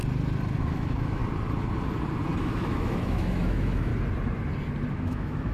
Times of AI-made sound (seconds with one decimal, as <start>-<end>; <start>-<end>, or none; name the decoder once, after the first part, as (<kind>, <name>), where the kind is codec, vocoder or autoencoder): 0.6-1.2 (autoencoder, DAC-VAE); 2.4-3.9; 4.9-5.5